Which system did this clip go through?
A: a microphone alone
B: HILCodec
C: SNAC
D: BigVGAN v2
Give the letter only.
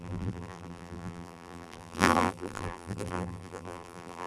D